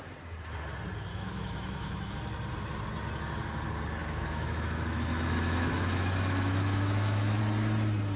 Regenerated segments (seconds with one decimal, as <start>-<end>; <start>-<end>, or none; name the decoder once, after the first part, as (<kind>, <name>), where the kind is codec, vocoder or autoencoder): 1.1-2.1 (autoencoder, DAC-VAE); 4.0-7.4